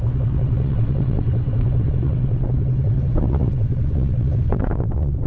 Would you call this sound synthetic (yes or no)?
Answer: yes